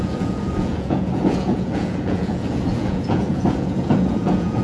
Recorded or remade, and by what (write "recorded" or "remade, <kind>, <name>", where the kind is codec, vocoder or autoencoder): remade, vocoder, Vocos